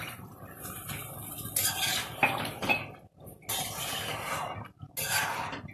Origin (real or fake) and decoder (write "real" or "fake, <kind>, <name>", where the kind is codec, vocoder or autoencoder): real